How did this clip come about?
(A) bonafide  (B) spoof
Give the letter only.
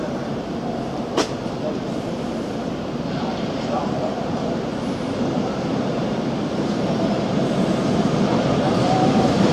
B